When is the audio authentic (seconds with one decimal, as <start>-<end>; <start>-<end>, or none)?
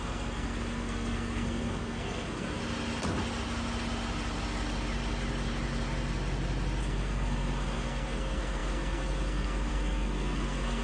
2.6-6.8